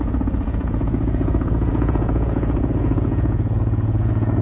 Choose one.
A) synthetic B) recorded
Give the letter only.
A